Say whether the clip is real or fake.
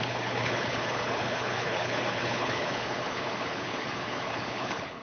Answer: fake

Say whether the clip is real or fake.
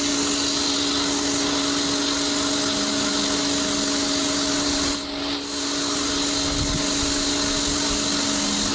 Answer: real